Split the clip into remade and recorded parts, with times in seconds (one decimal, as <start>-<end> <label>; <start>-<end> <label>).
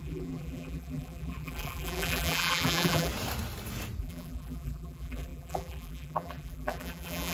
0.0-3.1 remade; 3.1-4.0 recorded; 4.0-7.3 remade